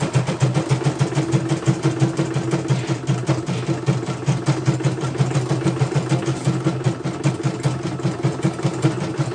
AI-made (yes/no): no